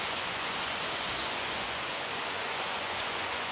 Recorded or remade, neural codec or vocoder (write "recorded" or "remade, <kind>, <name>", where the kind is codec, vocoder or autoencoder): remade, vocoder, Vocos